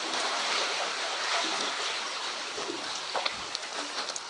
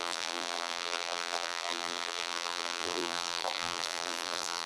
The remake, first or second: second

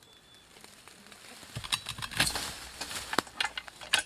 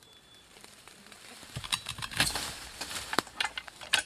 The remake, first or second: second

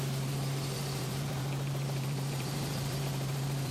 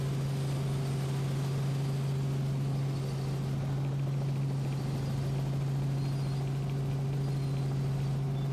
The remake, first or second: first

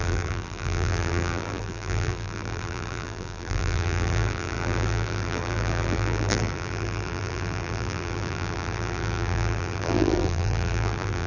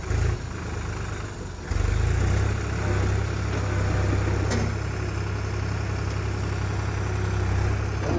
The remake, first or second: first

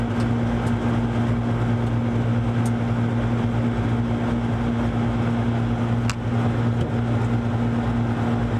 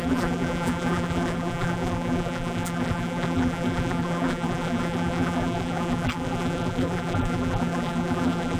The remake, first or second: second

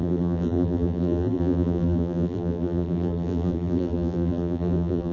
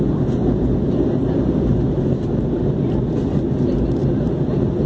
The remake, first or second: first